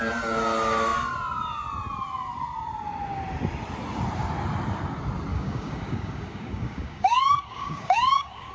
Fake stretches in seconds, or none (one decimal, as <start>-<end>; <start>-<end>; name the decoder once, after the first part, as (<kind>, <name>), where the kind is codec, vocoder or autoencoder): 5.3-8.5 (codec, DAC)